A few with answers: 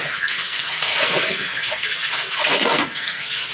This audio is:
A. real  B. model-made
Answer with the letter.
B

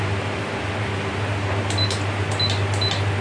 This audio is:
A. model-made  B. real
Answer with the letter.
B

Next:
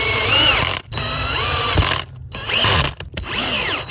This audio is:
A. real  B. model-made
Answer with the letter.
B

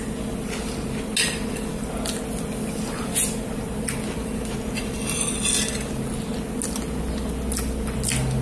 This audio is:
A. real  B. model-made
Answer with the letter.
A